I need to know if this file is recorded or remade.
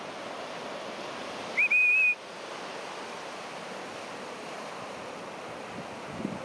recorded